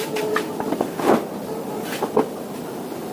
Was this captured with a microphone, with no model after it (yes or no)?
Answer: yes